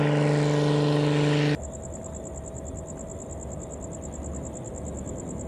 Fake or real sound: real